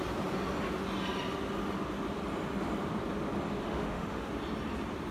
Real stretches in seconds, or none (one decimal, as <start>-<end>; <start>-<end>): 0.0-3.6; 4.3-5.1

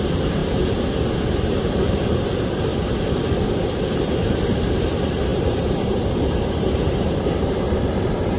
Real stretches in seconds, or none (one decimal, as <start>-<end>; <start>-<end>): 0.4-1.4; 2.7-3.4

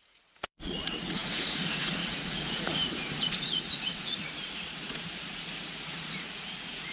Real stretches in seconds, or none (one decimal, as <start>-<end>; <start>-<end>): none

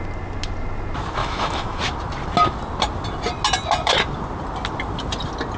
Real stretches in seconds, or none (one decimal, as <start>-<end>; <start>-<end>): 0.0-1.2; 1.8-5.6

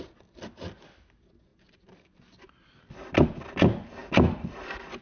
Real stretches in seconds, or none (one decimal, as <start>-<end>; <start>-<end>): 0.0-5.0

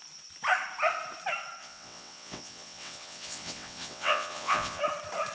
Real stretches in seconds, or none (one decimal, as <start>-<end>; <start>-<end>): 0.0-1.6; 4.8-5.3